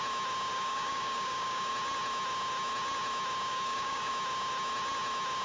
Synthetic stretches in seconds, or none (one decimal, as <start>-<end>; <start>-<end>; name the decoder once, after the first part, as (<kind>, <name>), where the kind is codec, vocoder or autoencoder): 0.5-1.7 (codec, DAC); 3.5-4.1